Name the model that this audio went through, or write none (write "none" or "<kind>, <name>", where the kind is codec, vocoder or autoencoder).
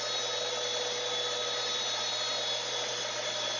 none